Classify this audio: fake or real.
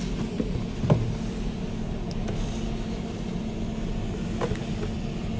real